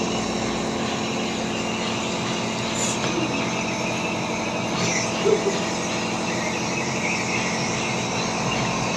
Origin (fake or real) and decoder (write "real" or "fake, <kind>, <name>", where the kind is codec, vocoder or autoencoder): real